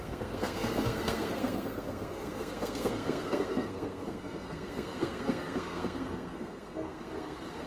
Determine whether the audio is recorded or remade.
remade